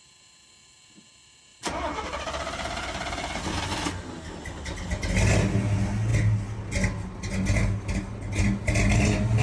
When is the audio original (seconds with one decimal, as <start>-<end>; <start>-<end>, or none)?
0.0-1.5; 3.5-9.4

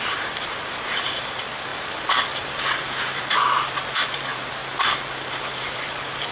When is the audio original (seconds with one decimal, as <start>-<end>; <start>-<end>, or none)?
4.6-5.6

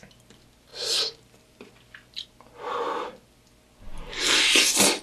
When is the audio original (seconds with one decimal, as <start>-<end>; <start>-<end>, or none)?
0.0-0.7; 1.7-5.0

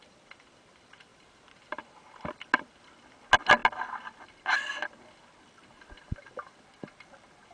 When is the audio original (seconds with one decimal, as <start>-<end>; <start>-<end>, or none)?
0.0-1.1; 1.8-7.5

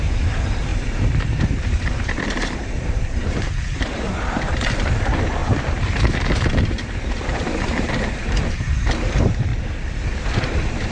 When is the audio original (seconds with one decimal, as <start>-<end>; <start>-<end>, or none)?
9.5-10.3